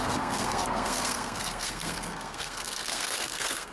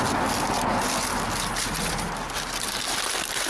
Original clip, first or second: second